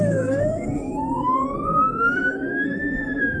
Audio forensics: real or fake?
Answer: fake